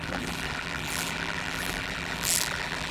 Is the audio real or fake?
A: fake